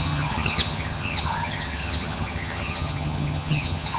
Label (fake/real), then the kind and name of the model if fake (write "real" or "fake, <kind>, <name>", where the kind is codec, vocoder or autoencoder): fake, vocoder, HiFi-GAN